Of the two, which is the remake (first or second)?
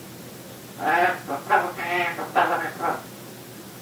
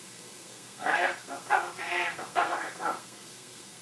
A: second